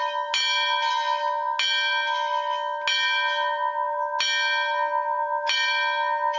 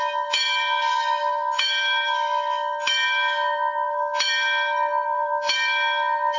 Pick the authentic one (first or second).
first